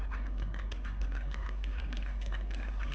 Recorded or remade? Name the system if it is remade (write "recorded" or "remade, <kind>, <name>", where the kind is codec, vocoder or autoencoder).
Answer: remade, codec, SNAC